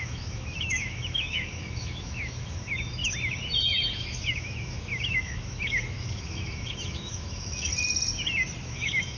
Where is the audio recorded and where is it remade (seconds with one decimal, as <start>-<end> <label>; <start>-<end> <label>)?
0.0-3.0 remade; 3.0-3.6 recorded; 3.6-7.7 remade; 7.7-8.6 recorded; 8.6-9.2 remade